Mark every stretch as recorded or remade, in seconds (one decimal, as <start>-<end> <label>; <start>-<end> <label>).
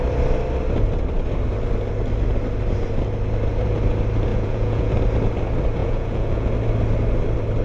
0.0-4.3 recorded; 4.3-4.9 remade; 4.9-5.8 recorded; 5.8-6.5 remade; 6.5-7.6 recorded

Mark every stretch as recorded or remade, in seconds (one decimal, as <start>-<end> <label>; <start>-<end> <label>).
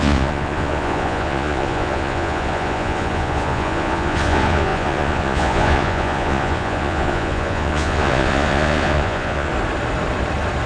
0.0-9.5 remade; 9.5-10.7 recorded